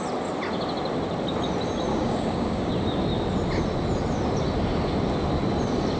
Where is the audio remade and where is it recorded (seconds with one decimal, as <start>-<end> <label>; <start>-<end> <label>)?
0.0-1.9 recorded; 1.9-2.7 remade; 2.7-6.0 recorded